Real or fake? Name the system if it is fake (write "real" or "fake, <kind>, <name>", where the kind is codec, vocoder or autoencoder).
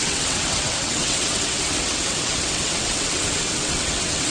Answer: fake, vocoder, WaveNeXt